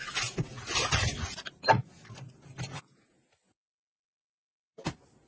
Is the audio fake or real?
real